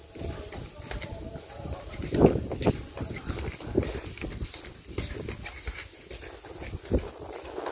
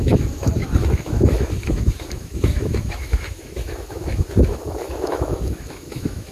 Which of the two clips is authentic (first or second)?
first